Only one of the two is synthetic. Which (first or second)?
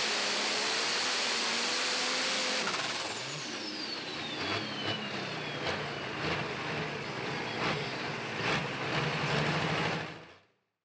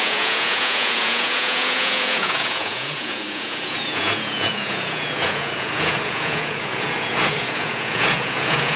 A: second